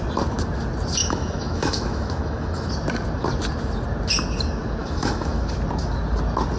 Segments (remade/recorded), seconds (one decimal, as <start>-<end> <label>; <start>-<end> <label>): 0.0-1.0 recorded; 1.0-2.7 remade; 2.7-4.8 recorded; 4.8-5.4 remade; 5.4-6.6 recorded